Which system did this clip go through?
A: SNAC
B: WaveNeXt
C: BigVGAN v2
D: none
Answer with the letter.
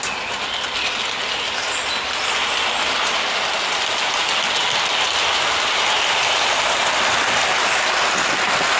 D